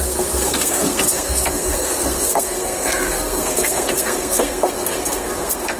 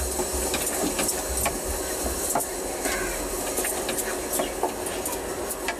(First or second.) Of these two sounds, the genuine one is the second